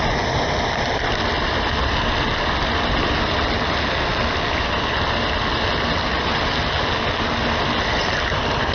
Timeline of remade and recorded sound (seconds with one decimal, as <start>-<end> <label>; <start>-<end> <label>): 0.0-8.7 recorded